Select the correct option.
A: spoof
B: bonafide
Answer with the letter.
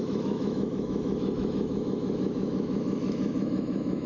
A